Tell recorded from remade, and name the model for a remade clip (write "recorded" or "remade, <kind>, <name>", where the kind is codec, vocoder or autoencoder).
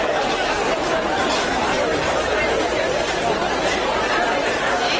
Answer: recorded